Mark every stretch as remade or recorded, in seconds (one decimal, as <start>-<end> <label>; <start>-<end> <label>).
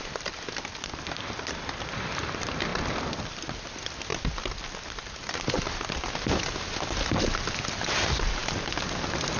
0.0-2.7 remade; 2.7-3.2 recorded; 3.2-4.1 remade; 4.1-7.8 recorded; 7.8-8.4 remade; 8.4-9.4 recorded